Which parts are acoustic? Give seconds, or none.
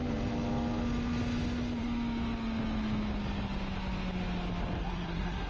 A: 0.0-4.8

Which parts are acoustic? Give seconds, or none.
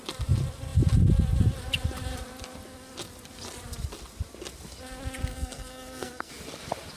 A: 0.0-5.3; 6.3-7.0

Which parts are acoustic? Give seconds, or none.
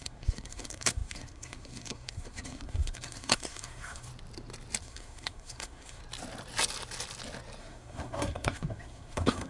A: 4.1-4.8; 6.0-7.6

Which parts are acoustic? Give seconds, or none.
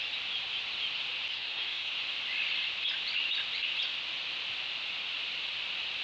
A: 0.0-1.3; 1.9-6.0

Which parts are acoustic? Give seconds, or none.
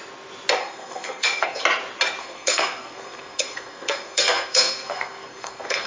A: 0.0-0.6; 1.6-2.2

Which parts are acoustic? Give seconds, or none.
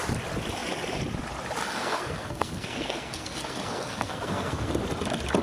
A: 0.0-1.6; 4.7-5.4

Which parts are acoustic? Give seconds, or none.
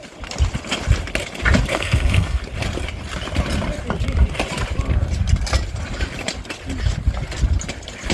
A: 0.0-1.7; 2.4-8.1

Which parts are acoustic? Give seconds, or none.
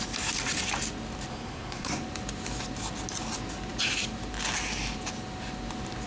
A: 0.0-1.3; 2.0-6.1